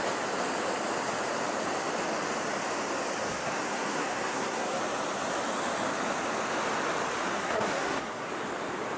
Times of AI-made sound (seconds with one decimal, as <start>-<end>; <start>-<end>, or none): 3.3-4.8; 7.3-8.3

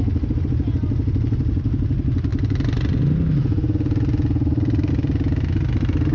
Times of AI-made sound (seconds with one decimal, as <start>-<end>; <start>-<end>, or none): none

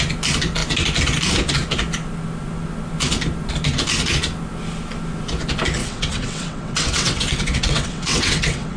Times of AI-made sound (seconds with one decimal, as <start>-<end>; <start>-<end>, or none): 5.8-8.8

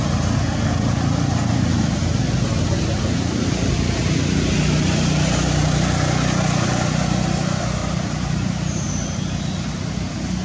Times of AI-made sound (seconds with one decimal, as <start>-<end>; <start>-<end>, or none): 7.8-9.4

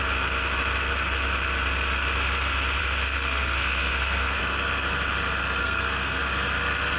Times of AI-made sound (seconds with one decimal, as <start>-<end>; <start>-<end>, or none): 2.8-4.4; 5.6-6.2

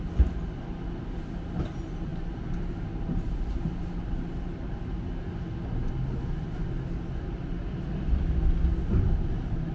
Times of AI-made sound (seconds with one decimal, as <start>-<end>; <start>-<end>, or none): none